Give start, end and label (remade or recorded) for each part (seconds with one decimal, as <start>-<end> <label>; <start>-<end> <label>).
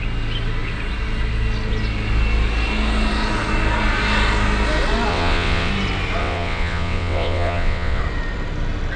0.0-5.1 recorded; 5.1-5.7 remade; 5.7-6.2 recorded; 6.2-8.0 remade; 8.0-9.0 recorded